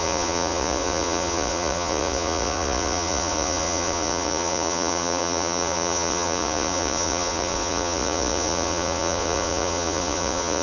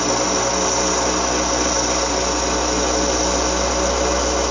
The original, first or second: second